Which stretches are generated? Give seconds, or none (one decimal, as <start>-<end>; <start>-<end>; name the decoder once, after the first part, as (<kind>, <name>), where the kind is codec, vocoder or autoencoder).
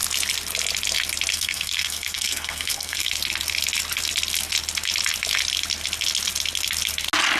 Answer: 1.3-3.1 (codec, SNAC)